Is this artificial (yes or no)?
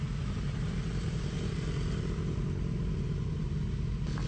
no